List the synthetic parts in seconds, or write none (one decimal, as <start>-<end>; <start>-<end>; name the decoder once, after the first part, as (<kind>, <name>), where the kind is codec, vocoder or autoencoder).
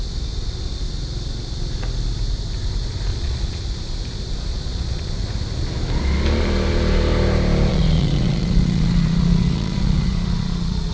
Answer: 3.1-3.6 (vocoder, Vocos); 4.5-5.1; 7.7-10.9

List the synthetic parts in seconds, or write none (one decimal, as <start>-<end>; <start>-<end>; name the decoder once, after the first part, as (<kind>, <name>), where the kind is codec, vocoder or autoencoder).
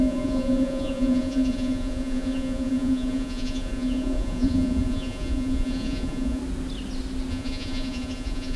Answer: 0.0-6.4 (vocoder, Vocos); 7.3-8.6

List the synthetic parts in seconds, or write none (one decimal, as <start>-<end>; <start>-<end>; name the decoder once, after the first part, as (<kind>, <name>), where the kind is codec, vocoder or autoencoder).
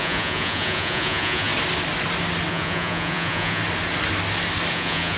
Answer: 0.0-1.5 (vocoder, Vocos); 2.5-3.6; 4.7-5.2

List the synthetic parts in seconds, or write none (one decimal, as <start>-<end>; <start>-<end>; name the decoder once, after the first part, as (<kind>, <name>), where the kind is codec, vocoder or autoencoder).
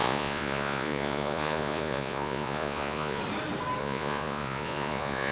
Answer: 0.0-3.2 (vocoder, Vocos); 3.8-5.3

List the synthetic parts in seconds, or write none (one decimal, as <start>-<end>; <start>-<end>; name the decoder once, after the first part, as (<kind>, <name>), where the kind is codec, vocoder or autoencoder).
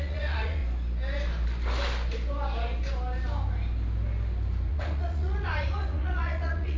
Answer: 0.0-0.6 (vocoder, Vocos); 4.7-6.8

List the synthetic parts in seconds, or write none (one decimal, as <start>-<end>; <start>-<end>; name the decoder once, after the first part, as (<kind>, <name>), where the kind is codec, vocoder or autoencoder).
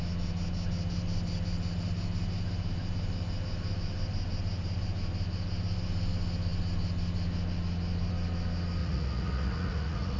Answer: 8.8-10.2 (vocoder, Vocos)